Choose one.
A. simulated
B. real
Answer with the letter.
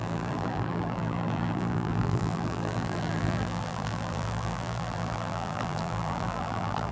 A